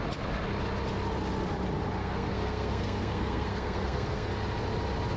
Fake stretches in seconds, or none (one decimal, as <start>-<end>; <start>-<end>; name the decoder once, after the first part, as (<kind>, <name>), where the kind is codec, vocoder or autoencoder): 2.0-4.3 (codec, SNAC)